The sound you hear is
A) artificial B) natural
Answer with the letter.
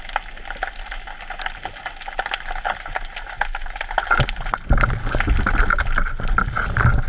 B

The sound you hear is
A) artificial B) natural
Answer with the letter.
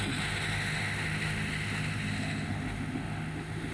A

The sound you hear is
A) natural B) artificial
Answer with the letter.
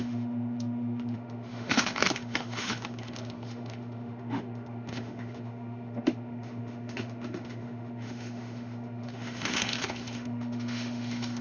B